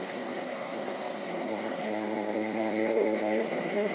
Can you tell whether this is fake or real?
fake